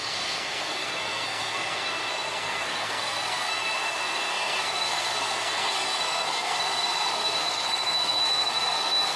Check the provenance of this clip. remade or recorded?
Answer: remade